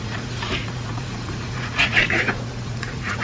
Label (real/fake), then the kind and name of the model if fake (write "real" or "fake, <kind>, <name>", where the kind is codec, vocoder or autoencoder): fake, vocoder, Vocos